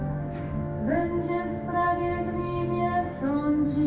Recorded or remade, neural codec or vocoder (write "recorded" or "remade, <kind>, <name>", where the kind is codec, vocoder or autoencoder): remade, autoencoder, DAC-VAE